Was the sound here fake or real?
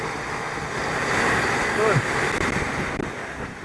real